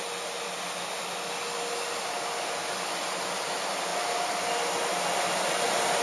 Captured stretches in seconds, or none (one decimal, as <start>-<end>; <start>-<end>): 0.0-6.0

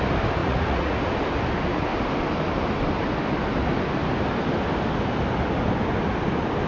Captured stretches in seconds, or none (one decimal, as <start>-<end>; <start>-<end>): 0.0-0.4; 1.0-6.7

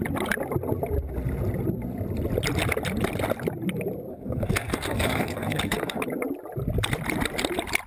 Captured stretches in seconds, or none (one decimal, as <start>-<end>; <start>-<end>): 0.0-4.1; 6.0-7.9